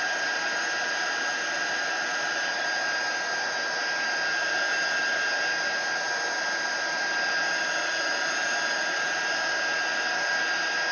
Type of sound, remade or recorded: recorded